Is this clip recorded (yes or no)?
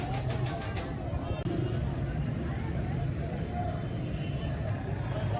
yes